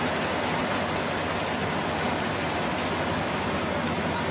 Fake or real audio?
real